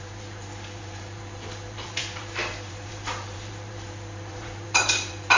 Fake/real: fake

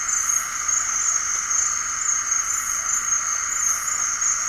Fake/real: real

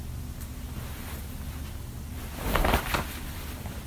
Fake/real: real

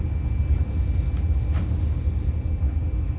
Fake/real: real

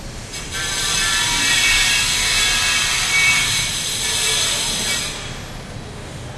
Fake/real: fake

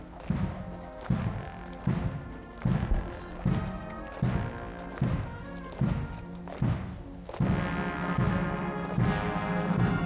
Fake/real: real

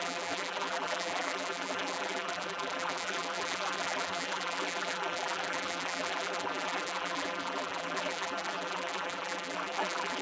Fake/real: fake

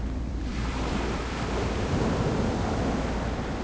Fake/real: fake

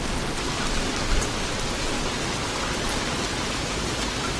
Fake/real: real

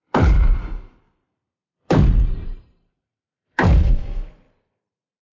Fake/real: fake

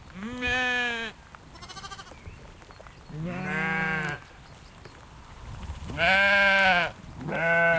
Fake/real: real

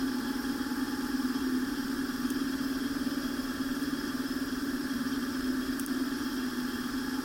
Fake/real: fake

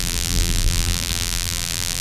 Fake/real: fake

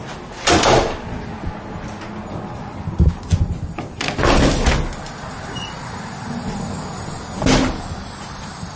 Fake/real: real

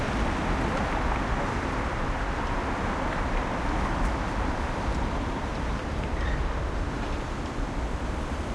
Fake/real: fake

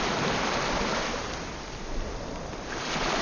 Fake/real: fake